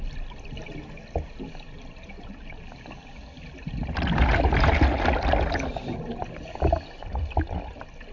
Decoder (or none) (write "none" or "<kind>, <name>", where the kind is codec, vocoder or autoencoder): none